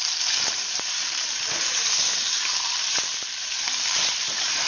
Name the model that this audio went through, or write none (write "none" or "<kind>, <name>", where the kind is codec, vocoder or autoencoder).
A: vocoder, BigVGAN v2